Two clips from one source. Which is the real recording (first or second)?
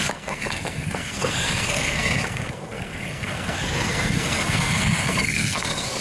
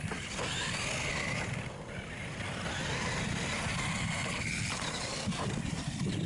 second